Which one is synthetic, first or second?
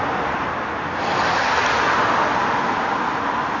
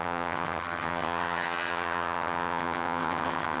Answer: second